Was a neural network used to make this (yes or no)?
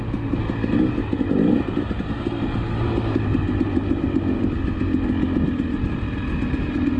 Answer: no